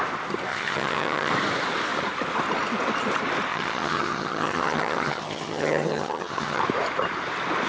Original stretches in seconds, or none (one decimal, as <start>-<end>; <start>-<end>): 0.0-0.5; 1.3-3.5; 6.6-7.7